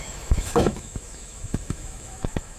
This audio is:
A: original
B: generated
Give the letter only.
B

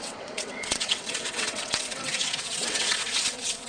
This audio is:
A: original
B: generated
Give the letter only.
B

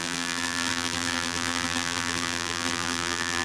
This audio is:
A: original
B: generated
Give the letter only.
B